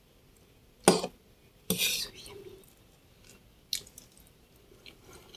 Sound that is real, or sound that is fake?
real